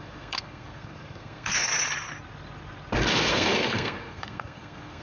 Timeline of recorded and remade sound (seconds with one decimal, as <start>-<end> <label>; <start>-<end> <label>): 0.0-1.7 remade; 1.7-3.3 recorded; 3.3-5.0 remade